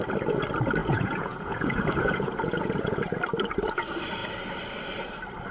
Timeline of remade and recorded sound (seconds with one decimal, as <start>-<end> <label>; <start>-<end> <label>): 0.0-0.8 recorded; 0.8-3.0 remade; 3.0-5.5 recorded